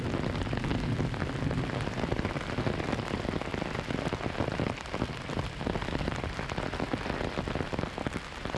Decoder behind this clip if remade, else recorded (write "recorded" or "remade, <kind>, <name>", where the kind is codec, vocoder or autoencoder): recorded